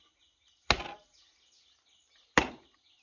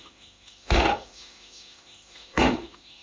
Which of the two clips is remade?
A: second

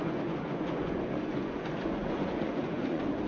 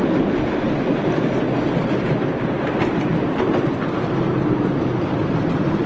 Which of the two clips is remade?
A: first